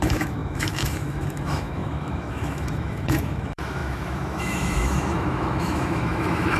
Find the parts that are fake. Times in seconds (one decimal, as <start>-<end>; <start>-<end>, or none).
0.0-6.6